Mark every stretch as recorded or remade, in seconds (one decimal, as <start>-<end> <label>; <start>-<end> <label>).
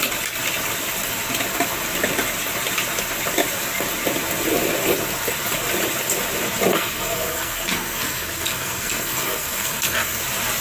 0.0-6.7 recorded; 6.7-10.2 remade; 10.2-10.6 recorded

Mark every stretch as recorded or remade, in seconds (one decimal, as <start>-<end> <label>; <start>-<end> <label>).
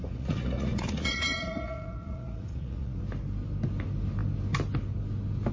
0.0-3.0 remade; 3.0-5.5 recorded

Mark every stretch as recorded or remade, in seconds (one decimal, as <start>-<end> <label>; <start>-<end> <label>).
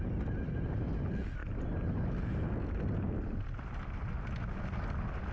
0.0-5.3 recorded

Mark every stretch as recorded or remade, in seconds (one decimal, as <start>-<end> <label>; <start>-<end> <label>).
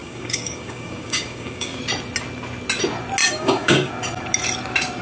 0.0-1.8 remade; 1.8-3.2 recorded; 3.2-3.9 remade; 3.9-5.0 recorded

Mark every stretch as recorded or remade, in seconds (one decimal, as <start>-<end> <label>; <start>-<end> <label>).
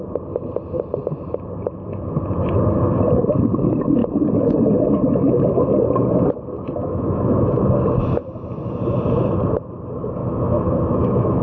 0.0-4.0 recorded; 4.0-4.6 remade; 4.6-6.8 recorded; 6.8-7.7 remade; 7.7-10.2 recorded; 10.2-11.4 remade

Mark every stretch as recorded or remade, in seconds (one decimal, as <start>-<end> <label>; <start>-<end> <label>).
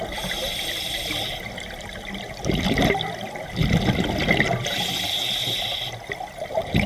0.0-6.9 recorded